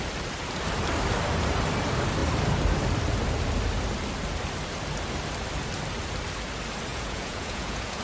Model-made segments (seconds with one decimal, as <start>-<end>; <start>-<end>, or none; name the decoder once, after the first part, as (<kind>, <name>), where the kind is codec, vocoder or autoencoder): 6.9-8.0 (vocoder, Vocos)